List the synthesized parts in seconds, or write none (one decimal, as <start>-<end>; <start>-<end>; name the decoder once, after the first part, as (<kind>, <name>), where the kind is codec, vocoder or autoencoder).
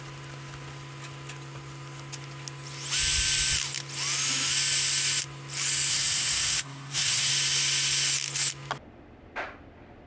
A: 5.9-7.3 (codec, SNAC)